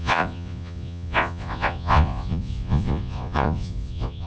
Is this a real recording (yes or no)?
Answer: no